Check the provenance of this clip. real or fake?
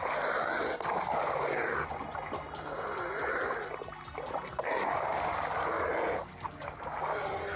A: real